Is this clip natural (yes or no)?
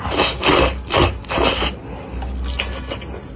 yes